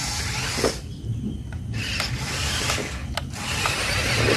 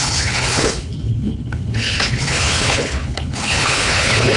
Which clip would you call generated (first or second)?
second